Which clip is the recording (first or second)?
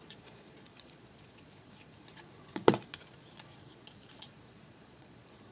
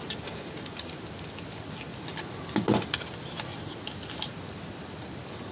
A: second